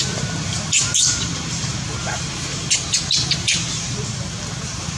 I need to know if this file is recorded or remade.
remade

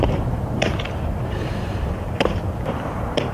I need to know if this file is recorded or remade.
remade